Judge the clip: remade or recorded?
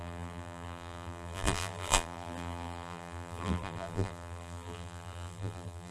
remade